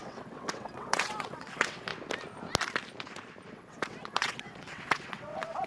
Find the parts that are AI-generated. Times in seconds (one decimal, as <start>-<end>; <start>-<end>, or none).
0.0-1.9; 3.5-5.7

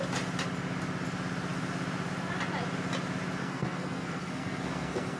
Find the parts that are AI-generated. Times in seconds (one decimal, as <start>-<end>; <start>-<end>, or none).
3.4-5.2

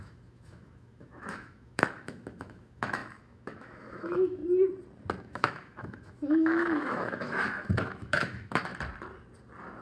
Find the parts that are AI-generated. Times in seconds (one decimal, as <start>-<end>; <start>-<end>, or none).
0.0-4.4; 5.2-8.7

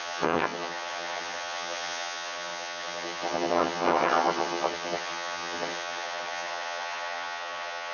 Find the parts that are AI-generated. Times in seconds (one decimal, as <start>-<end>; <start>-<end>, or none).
0.0-7.9

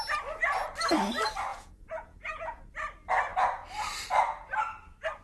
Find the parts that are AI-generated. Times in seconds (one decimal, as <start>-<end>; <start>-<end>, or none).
1.5-2.6

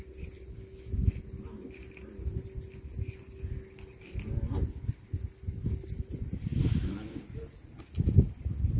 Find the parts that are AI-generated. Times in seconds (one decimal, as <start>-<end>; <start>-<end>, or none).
none